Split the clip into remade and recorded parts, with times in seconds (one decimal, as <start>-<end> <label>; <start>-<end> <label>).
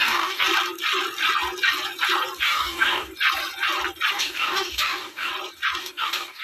0.0-0.5 remade; 0.5-2.4 recorded; 2.4-3.1 remade; 3.1-4.1 recorded; 4.1-5.3 remade; 5.3-5.8 recorded; 5.8-6.4 remade